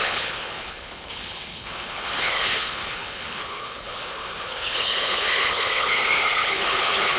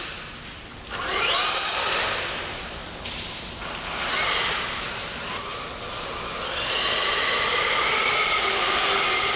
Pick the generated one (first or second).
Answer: first